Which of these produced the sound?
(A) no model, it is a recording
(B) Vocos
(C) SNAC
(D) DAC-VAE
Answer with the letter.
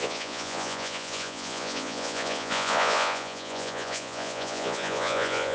B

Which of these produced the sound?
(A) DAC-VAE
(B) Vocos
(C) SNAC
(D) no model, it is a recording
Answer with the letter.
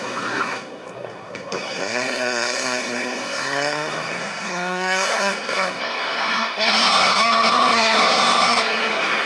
C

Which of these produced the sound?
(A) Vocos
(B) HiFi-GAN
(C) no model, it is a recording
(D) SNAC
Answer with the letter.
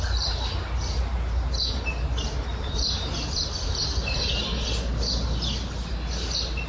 C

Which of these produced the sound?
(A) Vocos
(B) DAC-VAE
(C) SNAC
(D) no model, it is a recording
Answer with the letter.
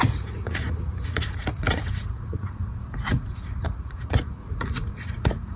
A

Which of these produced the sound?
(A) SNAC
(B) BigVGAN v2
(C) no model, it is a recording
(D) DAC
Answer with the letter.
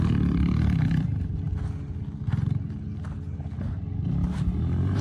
C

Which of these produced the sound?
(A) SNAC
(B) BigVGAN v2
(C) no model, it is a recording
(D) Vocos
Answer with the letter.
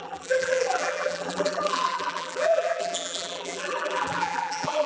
B